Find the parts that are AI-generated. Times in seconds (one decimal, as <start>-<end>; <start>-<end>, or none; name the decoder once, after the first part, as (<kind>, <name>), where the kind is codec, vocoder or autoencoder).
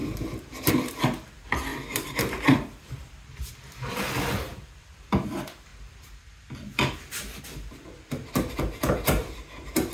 0.0-0.7 (vocoder, BigVGAN v2); 1.7-3.1; 4.5-5.2